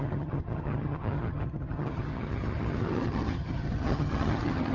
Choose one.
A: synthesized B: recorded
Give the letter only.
A